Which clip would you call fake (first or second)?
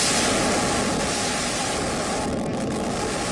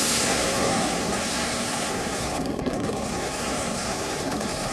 second